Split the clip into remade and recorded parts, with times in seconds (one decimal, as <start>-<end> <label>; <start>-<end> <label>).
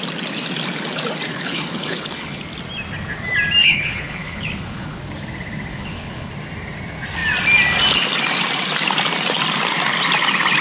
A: 0.0-1.3 recorded; 1.3-2.4 remade; 2.4-3.6 recorded; 3.6-5.0 remade; 5.0-5.7 recorded; 5.7-6.3 remade; 6.3-10.6 recorded